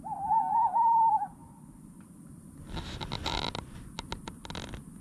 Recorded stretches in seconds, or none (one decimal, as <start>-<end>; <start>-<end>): 0.0-5.0